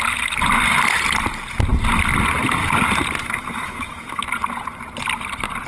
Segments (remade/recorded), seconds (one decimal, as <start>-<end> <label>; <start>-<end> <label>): 0.0-3.2 recorded; 3.2-4.2 remade; 4.2-5.7 recorded